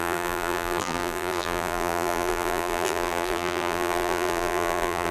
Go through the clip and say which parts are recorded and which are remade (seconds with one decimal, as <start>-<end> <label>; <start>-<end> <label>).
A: 0.0-5.1 remade